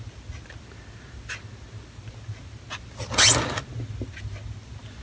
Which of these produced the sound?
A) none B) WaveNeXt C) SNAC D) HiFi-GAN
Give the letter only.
A